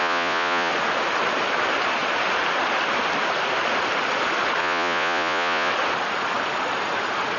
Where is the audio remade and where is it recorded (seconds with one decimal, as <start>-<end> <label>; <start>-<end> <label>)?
0.0-0.7 remade; 0.7-4.6 recorded; 4.6-5.7 remade; 5.7-7.4 recorded